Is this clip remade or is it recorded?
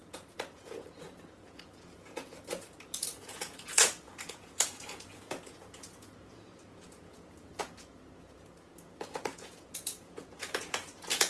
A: remade